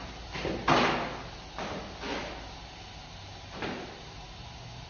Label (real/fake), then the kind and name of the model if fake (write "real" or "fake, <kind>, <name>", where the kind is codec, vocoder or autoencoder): real